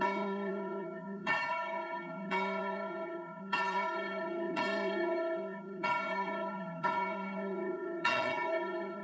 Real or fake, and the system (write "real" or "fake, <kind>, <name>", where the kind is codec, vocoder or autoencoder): fake, vocoder, HiFi-GAN